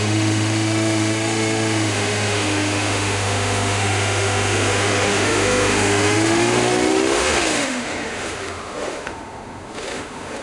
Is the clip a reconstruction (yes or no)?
yes